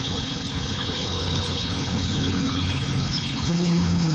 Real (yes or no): no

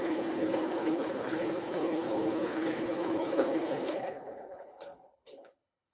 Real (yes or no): no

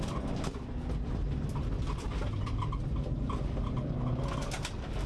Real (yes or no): yes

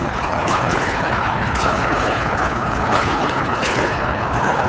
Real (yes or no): no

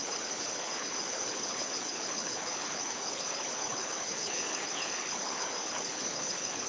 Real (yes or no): no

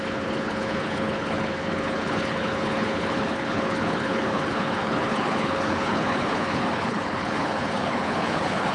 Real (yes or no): no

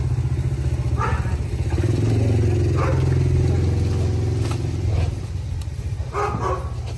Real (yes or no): yes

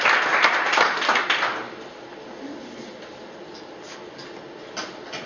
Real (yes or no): yes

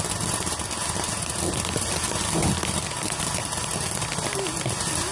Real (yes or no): yes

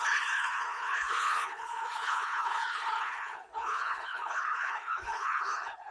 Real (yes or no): no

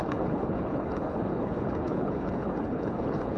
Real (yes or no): no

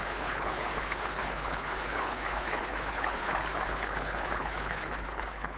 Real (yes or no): no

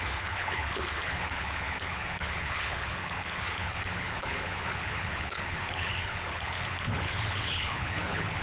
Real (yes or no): no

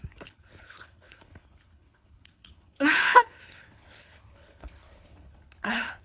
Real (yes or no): no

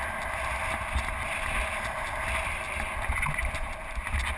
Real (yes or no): yes